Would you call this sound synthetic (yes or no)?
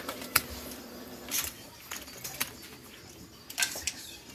yes